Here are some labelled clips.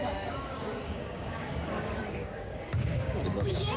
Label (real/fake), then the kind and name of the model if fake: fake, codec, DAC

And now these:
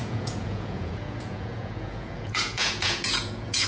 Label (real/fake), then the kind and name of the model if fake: fake, vocoder, Vocos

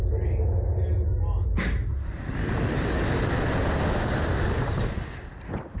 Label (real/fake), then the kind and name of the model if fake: real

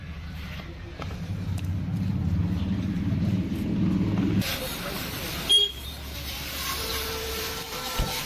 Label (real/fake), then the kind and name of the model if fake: fake, vocoder, BigVGAN v2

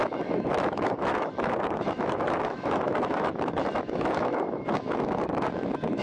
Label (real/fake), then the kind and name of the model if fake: fake, autoencoder, DAC-VAE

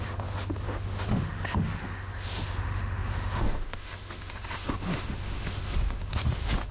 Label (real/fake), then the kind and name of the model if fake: fake, autoencoder, DAC-VAE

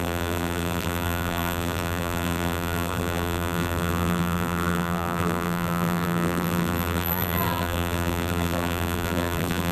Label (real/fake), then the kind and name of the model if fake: fake, vocoder, BigVGAN v2